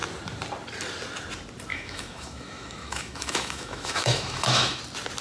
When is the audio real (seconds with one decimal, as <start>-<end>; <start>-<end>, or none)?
0.0-1.7; 4.8-5.2